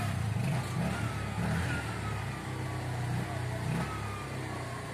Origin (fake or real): real